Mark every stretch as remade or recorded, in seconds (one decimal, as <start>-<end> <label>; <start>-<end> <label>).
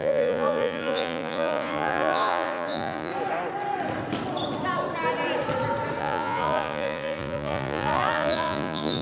0.0-3.1 remade; 3.1-6.0 recorded; 6.0-9.0 remade